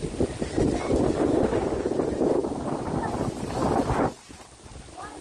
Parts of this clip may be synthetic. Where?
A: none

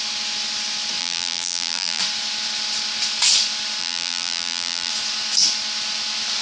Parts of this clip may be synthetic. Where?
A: 1.0-2.0 (vocoder, BigVGAN v2); 3.8-4.9

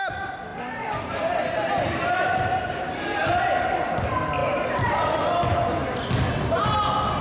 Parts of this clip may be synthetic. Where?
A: none

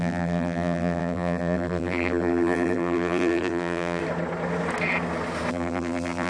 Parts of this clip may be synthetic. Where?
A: 0.0-4.0 (vocoder, BigVGAN v2); 5.5-6.3